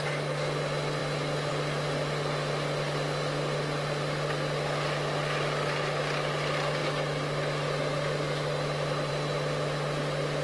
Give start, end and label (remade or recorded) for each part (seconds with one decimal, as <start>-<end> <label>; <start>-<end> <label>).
0.0-10.4 recorded